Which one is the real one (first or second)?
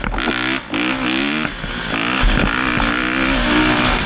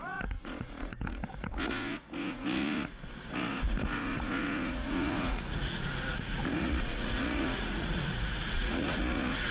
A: first